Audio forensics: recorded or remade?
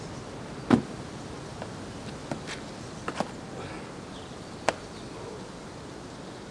recorded